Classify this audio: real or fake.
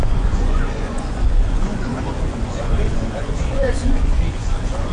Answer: fake